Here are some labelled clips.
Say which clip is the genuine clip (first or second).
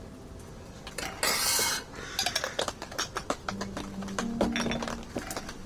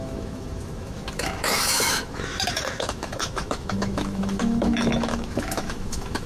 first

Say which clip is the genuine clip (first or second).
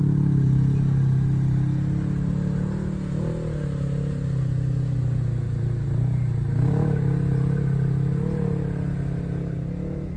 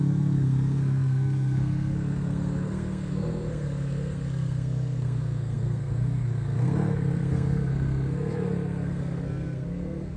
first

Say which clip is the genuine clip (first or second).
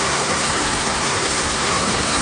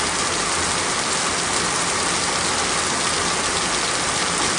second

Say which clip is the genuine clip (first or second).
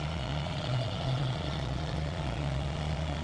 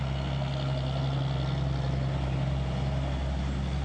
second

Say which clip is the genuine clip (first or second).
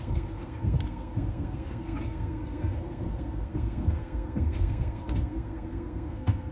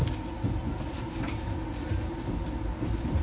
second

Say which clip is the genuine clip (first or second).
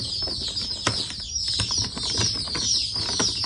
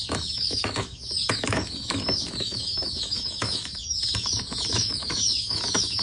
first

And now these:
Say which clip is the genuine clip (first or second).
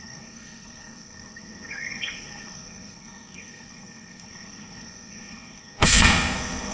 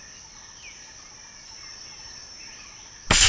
second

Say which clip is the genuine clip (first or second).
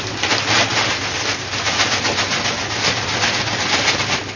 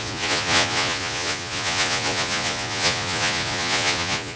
first